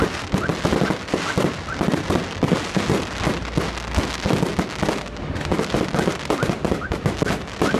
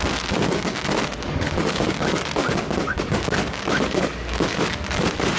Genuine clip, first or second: first